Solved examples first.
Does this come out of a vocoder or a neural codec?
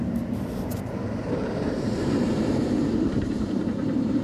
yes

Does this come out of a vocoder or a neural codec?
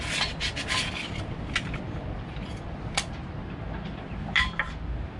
no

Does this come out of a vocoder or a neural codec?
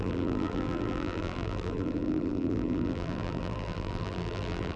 yes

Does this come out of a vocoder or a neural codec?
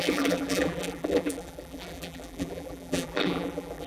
yes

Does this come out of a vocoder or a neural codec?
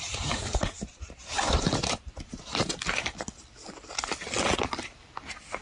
yes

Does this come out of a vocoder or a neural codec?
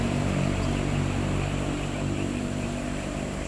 yes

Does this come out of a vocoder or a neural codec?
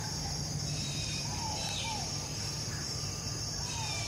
yes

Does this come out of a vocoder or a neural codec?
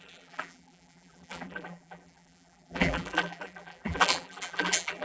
yes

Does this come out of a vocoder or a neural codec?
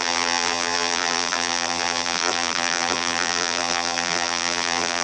yes